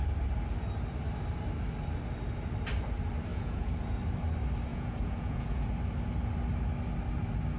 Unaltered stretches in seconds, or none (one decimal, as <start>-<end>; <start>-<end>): 0.0-3.3; 4.0-4.7; 5.6-7.6